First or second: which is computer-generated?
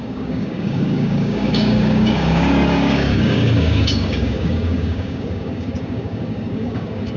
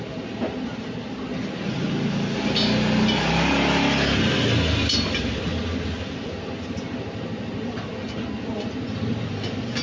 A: first